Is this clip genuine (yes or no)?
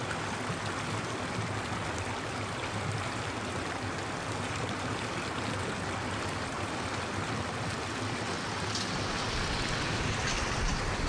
yes